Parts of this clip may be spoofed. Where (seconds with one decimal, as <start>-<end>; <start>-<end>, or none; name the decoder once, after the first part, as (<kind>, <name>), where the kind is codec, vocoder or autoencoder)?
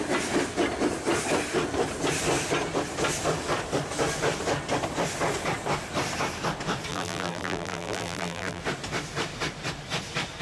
6.9-8.6 (vocoder, BigVGAN v2)